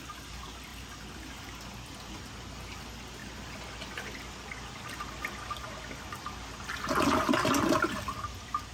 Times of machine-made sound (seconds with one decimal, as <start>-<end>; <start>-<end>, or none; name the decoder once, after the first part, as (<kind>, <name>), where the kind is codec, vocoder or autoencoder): none